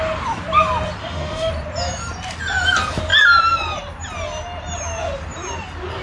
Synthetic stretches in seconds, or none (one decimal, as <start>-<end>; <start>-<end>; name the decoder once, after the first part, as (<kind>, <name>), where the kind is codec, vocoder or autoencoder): 1.0-1.5 (autoencoder, DAC-VAE)